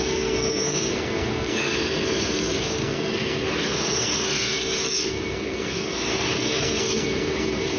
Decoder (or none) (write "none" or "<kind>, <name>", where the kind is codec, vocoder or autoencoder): codec, SNAC